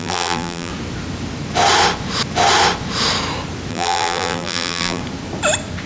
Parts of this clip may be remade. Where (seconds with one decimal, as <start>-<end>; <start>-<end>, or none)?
0.0-0.7; 3.7-5.0

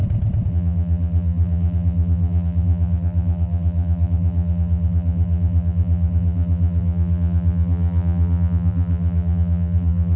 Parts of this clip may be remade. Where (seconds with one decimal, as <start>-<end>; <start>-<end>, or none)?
0.5-10.2

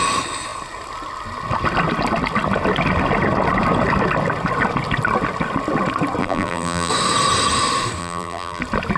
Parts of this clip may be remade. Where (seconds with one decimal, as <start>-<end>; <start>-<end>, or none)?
6.2-6.9; 8.0-8.6

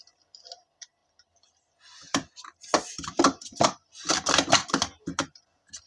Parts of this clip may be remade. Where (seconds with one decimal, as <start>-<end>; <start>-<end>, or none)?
1.0-4.5